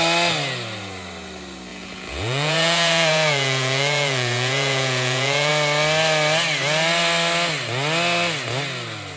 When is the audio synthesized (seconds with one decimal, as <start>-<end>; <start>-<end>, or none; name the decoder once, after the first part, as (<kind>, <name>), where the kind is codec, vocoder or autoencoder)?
1.7-5.5 (vocoder, Vocos)